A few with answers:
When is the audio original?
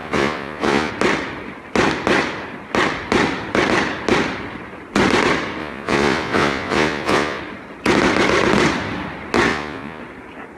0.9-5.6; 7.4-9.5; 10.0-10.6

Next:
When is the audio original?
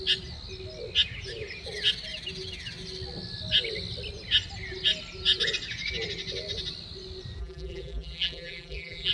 0.0-7.4